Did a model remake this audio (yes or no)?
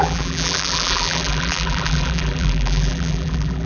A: yes